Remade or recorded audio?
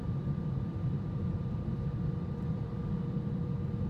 remade